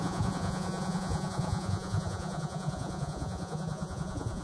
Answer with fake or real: fake